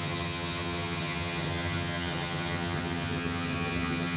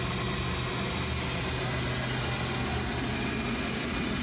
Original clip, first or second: second